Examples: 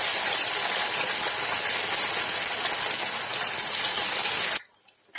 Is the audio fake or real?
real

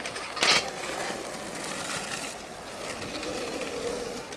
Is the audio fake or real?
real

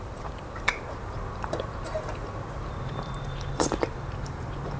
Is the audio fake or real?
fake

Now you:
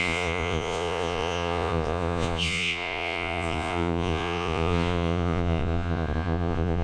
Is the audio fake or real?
fake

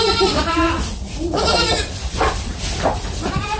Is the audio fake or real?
fake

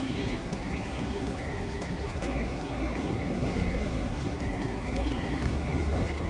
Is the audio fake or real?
fake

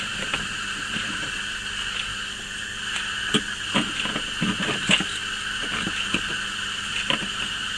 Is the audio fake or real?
real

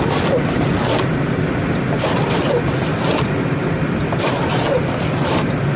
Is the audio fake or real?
real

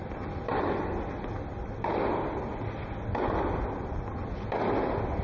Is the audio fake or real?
real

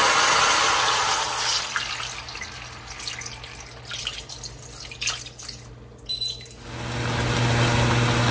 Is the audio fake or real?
real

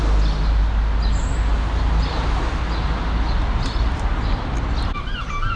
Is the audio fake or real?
real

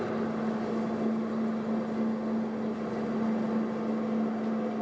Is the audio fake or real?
real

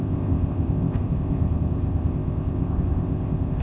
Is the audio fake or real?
fake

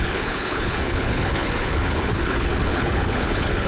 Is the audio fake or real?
fake